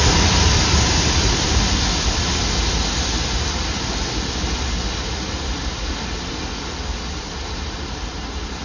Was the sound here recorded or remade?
recorded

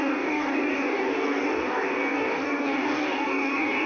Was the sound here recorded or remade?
remade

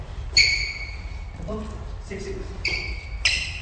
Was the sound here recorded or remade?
recorded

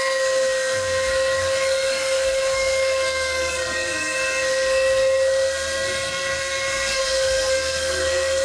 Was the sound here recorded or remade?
remade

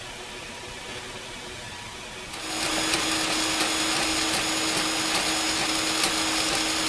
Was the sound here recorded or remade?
recorded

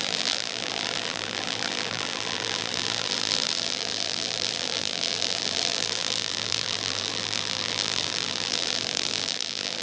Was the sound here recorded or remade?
remade